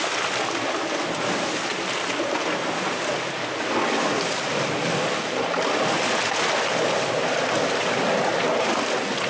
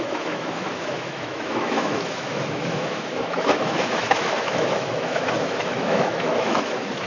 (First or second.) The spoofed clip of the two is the second